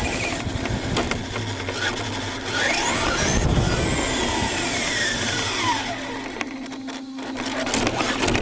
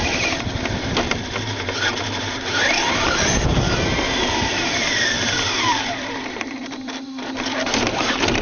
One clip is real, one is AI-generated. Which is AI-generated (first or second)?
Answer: second